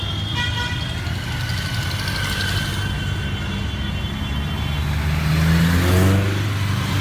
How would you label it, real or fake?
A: real